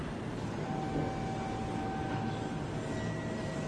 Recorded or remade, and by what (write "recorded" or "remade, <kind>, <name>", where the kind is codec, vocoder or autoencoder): recorded